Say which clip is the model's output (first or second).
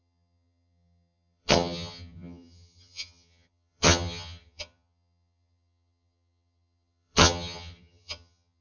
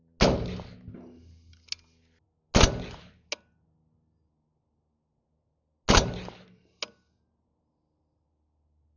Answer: first